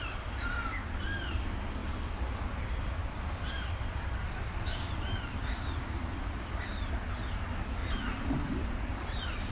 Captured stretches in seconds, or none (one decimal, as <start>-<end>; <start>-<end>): 0.0-7.8